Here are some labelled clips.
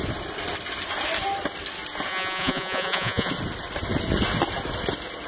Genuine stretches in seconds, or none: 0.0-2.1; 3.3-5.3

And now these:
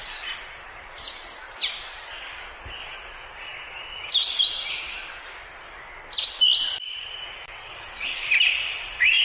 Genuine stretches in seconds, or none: 0.0-9.2

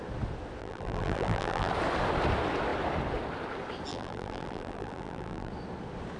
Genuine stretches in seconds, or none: 0.0-0.6; 1.7-3.9; 5.5-6.2

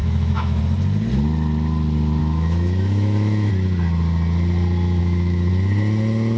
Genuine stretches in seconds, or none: 0.6-2.2; 3.5-5.0; 5.5-6.4